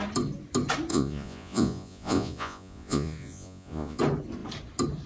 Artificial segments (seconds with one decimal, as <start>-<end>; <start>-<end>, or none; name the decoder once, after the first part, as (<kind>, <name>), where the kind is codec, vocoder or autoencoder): 0.9-4.0 (vocoder, Vocos)